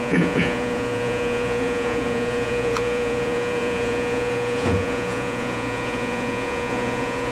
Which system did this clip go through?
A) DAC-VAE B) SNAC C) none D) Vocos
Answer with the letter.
D